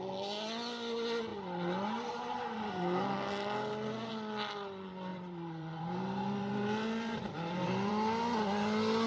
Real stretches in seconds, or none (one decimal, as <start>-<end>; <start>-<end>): 0.0-5.1; 7.9-9.1